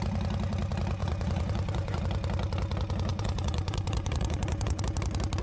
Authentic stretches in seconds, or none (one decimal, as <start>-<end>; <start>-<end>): 0.0-1.0; 2.0-3.1; 4.8-5.4